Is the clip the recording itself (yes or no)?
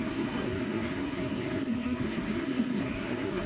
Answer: no